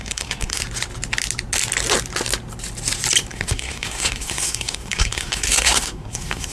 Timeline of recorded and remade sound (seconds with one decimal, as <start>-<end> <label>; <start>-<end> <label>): 0.0-0.6 remade; 0.6-3.3 recorded; 3.3-6.5 remade